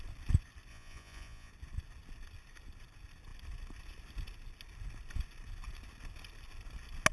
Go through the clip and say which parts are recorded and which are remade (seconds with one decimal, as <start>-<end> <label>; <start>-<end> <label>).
0.0-0.7 recorded; 0.7-1.5 remade; 1.5-7.1 recorded